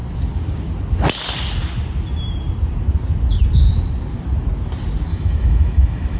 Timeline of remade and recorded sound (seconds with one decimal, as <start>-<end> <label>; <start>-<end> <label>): 0.0-5.1 recorded; 5.1-6.2 remade